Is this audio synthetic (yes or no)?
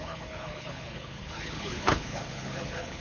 yes